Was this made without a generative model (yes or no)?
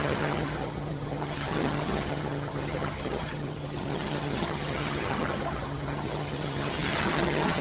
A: no